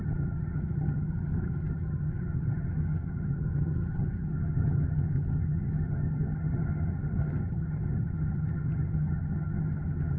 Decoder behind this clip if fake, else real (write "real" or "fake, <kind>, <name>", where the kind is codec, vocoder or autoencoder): fake, vocoder, HiFi-GAN